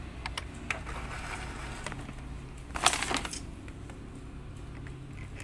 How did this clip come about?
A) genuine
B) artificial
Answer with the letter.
A